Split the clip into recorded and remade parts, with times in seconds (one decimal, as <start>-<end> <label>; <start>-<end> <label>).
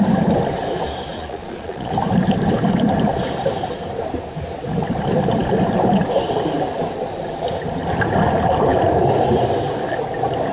0.0-1.1 recorded; 1.1-1.9 remade; 1.9-10.5 recorded